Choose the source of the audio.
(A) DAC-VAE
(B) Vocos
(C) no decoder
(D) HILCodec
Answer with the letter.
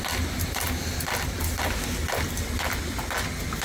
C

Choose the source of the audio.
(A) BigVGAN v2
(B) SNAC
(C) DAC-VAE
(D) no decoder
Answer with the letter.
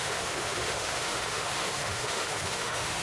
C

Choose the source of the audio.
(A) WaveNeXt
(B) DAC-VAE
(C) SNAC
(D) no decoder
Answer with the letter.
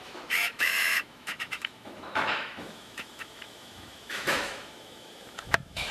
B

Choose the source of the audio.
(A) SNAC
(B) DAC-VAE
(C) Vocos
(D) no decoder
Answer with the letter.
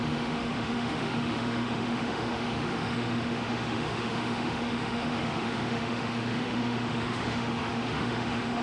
B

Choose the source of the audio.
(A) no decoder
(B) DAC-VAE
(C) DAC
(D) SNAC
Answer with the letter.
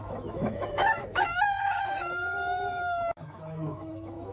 B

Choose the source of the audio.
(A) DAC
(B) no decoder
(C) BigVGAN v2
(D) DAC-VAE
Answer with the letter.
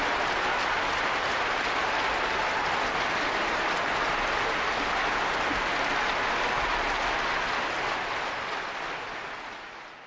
B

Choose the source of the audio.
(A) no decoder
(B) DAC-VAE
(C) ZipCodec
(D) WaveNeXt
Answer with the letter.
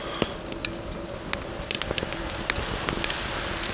A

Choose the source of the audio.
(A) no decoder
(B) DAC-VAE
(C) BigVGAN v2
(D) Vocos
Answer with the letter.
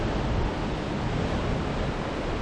A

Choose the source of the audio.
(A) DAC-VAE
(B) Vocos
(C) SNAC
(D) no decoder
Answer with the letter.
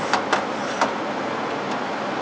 D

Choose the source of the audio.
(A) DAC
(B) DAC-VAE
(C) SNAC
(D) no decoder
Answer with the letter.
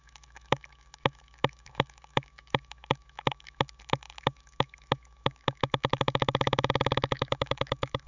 B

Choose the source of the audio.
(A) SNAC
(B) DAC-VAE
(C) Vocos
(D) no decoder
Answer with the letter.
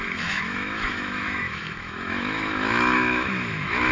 B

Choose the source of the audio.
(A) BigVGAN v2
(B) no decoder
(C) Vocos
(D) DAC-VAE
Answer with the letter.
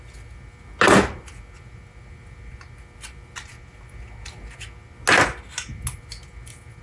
B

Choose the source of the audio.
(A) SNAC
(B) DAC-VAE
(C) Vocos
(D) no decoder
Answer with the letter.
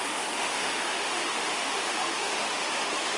B